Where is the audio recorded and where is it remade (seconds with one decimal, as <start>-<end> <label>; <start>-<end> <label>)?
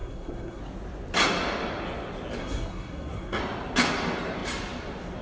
0.0-0.6 remade; 0.6-2.4 recorded; 2.4-3.4 remade; 3.4-5.2 recorded